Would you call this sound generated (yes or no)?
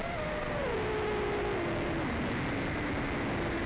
no